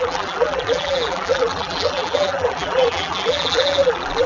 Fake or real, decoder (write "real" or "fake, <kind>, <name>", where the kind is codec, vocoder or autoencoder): fake, vocoder, BigVGAN v2